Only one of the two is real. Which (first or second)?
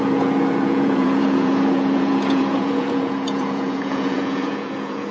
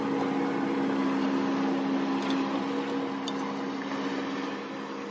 second